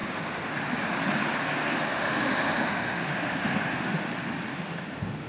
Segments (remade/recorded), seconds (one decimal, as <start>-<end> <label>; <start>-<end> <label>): 0.0-0.5 remade; 0.5-1.9 recorded; 1.9-4.1 remade; 4.1-4.5 recorded; 4.5-5.3 remade